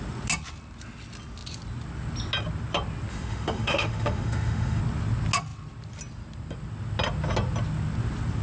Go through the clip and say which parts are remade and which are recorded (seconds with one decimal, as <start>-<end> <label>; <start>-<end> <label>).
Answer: 0.0-3.1 recorded; 3.1-4.8 remade; 4.8-8.4 recorded